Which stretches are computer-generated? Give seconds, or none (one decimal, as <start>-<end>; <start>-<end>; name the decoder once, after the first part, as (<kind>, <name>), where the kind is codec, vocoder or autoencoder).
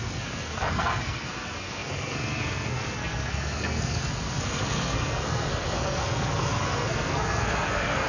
0.0-8.1 (codec, SNAC)